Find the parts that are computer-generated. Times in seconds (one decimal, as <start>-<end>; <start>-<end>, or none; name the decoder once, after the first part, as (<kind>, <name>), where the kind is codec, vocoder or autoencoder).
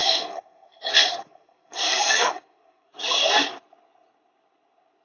0.0-3.0 (codec, SNAC)